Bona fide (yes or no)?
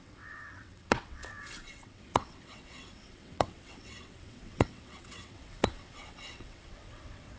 no